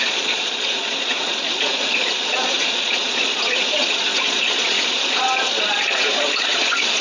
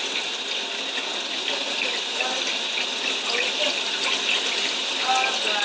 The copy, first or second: first